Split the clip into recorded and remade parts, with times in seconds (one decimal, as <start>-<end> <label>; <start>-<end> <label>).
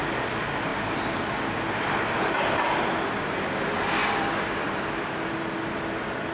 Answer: 0.0-4.0 recorded; 4.0-4.7 remade; 4.7-6.3 recorded